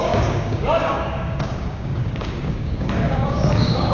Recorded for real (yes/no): no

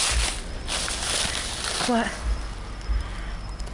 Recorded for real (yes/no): yes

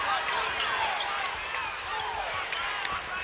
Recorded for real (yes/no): yes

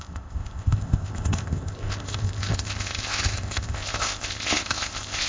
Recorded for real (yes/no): no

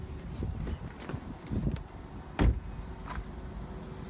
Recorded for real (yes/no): yes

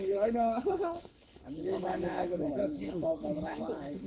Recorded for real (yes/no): no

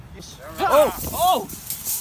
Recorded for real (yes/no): yes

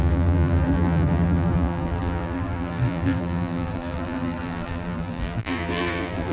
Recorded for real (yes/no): no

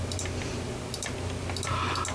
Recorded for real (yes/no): yes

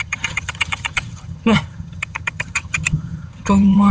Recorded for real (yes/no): no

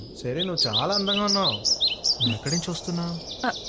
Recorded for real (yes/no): yes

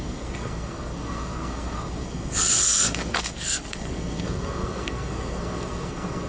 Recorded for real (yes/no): no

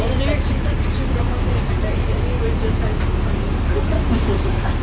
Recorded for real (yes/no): yes